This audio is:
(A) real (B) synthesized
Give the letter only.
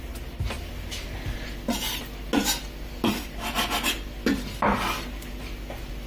A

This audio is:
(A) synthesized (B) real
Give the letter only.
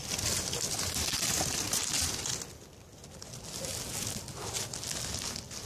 B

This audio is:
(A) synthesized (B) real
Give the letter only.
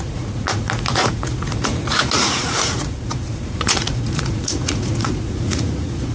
A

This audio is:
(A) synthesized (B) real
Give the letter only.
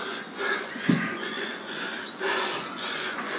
A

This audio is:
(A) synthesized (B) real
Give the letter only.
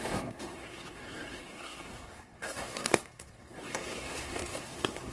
A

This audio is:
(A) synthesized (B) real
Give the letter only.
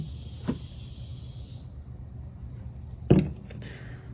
B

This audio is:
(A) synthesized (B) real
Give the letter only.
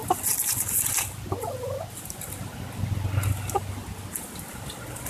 B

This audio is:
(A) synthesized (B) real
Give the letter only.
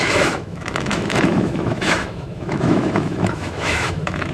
A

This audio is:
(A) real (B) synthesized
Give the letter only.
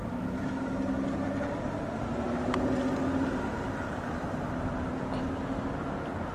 A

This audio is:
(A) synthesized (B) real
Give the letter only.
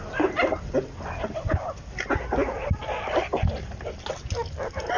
B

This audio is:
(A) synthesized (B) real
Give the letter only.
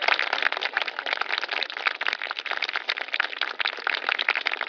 B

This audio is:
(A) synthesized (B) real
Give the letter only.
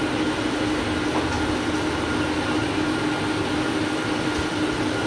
B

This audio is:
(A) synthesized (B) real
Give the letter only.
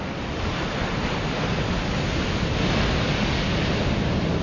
B